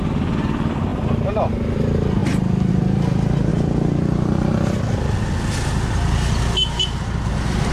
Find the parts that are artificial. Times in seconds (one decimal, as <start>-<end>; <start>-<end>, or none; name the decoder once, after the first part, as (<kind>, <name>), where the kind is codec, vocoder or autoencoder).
none